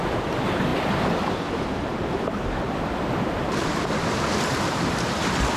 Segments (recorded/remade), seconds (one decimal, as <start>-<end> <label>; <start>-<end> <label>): 0.0-5.6 remade